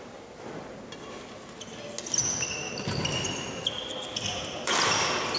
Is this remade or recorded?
recorded